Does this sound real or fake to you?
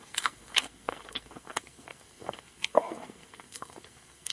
fake